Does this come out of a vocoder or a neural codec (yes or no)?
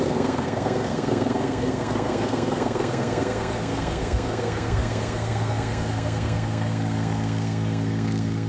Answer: yes